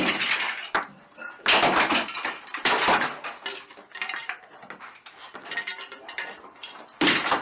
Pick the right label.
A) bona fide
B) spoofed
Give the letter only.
A